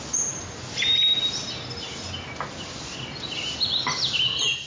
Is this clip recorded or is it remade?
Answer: recorded